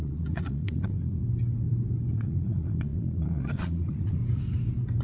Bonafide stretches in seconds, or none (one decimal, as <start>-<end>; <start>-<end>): 1.2-2.1; 4.2-5.0